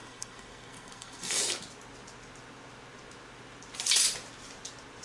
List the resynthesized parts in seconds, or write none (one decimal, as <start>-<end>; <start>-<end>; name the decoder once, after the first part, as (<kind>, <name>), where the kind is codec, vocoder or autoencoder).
0.0-1.4 (codec, SNAC)